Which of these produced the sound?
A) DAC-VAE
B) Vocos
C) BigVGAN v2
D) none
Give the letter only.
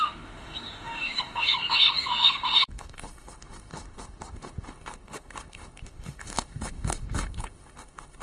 A